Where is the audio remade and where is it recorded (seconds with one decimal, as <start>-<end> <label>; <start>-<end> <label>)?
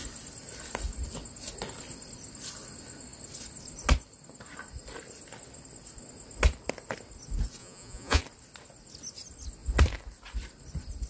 0.0-7.6 recorded; 7.6-8.2 remade; 8.2-11.1 recorded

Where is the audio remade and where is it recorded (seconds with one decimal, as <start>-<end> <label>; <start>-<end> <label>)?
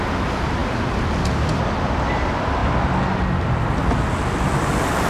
0.0-5.1 recorded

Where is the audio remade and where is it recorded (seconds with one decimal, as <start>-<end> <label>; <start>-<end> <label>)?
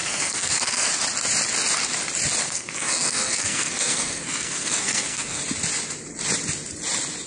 0.0-0.9 remade; 0.9-2.4 recorded; 2.4-5.4 remade; 5.4-7.3 recorded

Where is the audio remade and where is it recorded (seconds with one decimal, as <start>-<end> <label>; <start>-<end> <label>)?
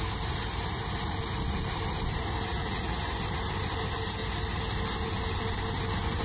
0.0-2.5 recorded; 2.5-3.0 remade; 3.0-6.2 recorded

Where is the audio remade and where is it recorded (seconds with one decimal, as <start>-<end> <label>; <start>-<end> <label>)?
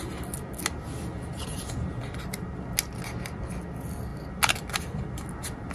0.0-5.7 recorded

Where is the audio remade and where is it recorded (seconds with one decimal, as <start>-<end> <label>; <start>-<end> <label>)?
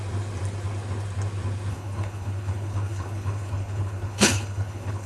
0.0-1.7 recorded; 1.7-5.1 remade